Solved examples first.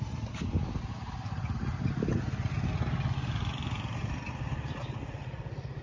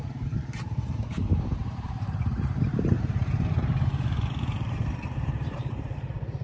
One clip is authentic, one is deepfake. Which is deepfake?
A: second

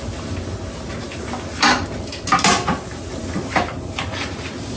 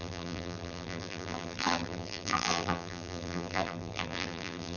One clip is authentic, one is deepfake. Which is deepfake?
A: second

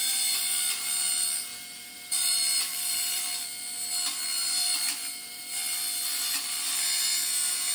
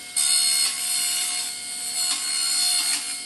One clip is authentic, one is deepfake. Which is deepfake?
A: first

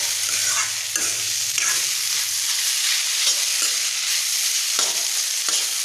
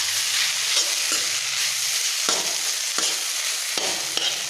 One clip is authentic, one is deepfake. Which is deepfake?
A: first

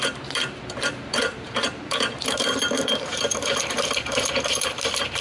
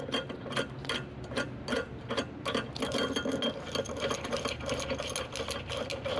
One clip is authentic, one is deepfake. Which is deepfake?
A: first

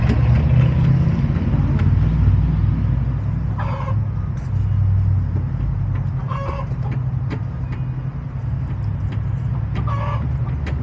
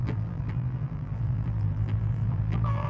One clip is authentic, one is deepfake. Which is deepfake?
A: second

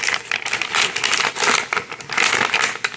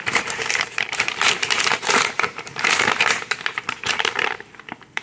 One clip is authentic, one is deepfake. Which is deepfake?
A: second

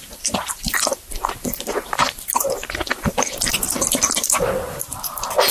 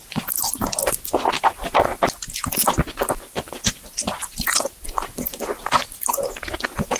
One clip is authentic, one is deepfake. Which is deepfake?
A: first